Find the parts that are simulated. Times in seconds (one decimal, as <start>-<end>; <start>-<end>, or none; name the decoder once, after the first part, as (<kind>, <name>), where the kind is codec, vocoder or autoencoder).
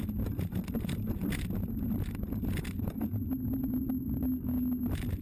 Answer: none